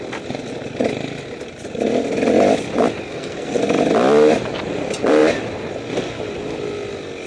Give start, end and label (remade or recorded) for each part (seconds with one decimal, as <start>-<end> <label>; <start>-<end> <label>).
0.0-3.1 recorded; 3.1-3.6 remade; 3.6-7.3 recorded